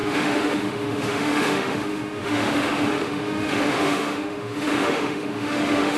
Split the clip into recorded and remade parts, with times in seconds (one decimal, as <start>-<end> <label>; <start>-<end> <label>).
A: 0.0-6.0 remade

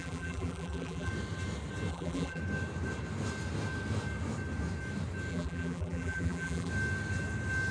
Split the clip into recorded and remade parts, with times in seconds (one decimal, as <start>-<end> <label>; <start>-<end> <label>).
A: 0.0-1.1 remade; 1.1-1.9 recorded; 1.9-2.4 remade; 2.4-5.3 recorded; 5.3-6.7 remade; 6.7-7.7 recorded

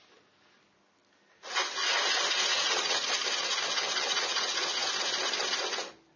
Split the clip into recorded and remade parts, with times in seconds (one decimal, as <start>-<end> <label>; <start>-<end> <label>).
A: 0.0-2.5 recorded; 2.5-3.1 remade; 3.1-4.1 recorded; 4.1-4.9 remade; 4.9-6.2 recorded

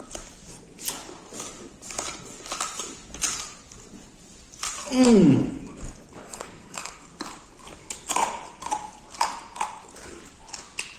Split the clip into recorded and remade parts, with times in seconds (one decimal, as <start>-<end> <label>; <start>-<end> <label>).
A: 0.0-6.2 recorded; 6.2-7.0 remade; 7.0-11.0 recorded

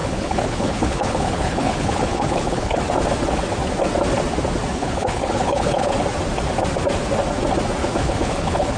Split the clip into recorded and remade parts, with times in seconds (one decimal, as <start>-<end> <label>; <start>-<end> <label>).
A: 0.0-2.8 remade; 2.8-4.7 recorded; 4.7-5.9 remade; 5.9-7.8 recorded; 7.8-8.8 remade

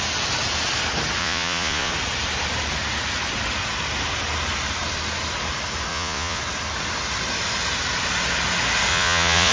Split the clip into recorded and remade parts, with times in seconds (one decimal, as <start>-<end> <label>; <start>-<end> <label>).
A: 0.0-1.2 recorded; 1.2-1.9 remade; 1.9-5.9 recorded; 5.9-6.4 remade; 6.4-8.9 recorded; 8.9-9.5 remade

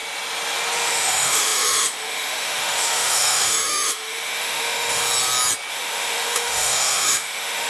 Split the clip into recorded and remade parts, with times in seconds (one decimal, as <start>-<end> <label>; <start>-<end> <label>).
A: 0.0-0.9 recorded; 0.9-5.0 remade; 5.0-5.7 recorded; 5.7-7.7 remade

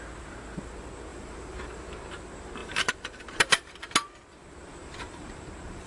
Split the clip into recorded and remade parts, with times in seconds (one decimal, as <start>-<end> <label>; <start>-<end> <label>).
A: 0.0-1.1 recorded; 1.1-1.9 remade; 1.9-2.6 recorded; 2.6-3.7 remade; 3.7-4.8 recorded; 4.8-5.9 remade